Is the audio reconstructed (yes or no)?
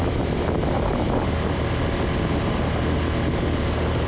no